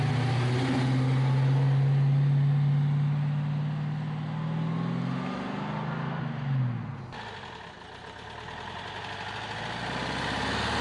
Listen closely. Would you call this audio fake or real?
real